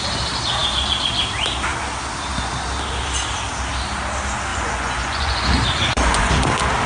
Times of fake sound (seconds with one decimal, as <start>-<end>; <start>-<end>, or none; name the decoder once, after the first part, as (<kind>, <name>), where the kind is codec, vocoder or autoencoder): 4.5-6.3 (vocoder, Vocos)